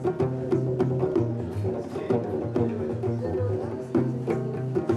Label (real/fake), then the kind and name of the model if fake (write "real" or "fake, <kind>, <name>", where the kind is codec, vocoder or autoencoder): real